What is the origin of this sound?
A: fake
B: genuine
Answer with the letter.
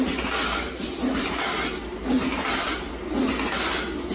B